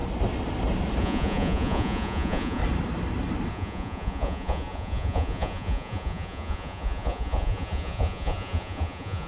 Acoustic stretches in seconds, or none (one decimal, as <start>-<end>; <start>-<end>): 0.0-1.0; 2.6-3.5